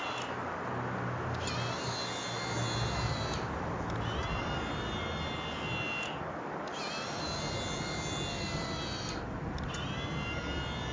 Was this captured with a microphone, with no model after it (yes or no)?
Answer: yes